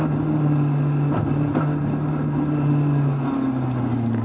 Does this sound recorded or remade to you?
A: recorded